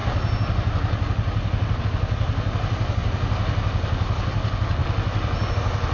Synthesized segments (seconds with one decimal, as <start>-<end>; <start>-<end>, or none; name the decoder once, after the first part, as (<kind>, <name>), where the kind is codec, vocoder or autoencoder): none